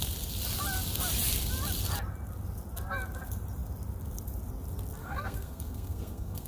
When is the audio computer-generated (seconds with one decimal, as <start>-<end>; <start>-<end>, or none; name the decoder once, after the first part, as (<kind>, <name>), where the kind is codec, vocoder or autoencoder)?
5.0-6.5 (codec, SNAC)